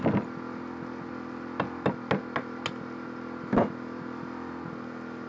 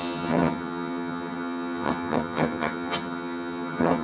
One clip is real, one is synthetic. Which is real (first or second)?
first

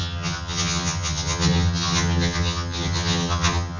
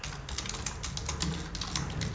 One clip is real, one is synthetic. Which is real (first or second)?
second